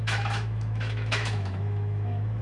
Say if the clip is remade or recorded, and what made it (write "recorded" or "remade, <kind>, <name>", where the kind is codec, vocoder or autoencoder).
remade, autoencoder, DAC-VAE